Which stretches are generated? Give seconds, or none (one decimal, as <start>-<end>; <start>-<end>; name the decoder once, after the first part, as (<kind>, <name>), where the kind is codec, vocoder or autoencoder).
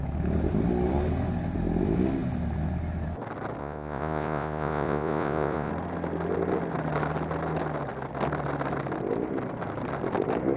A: 3.6-5.7 (vocoder, Vocos)